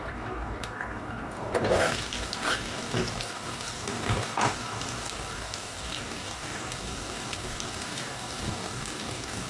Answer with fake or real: fake